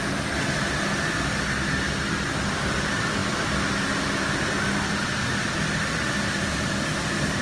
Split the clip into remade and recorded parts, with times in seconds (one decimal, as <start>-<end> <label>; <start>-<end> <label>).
0.0-7.4 recorded